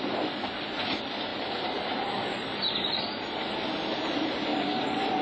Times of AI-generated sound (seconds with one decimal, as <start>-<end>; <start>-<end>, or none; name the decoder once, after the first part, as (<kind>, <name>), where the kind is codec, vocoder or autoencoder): 1.3-3.0 (vocoder, BigVGAN v2); 4.5-5.2